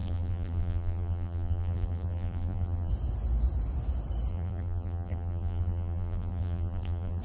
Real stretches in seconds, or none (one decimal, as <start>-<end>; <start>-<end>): 2.9-4.3